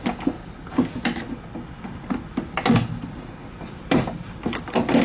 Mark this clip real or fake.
real